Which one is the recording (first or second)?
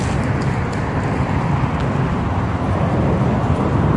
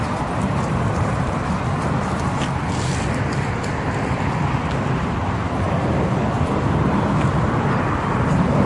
first